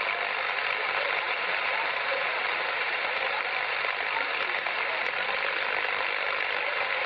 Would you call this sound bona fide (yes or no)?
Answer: no